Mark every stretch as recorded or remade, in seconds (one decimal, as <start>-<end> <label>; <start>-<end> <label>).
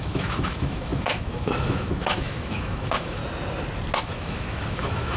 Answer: 0.0-3.2 remade; 3.2-4.0 recorded; 4.0-5.2 remade